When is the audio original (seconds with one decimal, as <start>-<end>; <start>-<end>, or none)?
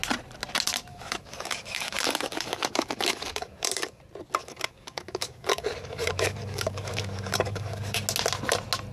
0.0-0.9; 4.0-4.4; 8.0-8.9